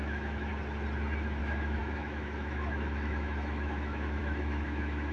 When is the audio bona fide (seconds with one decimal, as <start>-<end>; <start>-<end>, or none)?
0.5-1.4